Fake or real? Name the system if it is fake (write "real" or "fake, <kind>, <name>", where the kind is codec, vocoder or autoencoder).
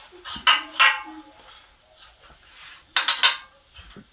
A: real